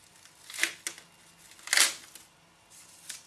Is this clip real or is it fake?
real